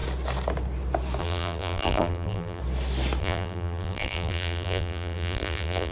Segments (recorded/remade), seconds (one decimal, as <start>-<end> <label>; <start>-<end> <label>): 0.0-1.2 recorded; 1.2-2.6 remade; 2.6-3.2 recorded; 3.2-5.9 remade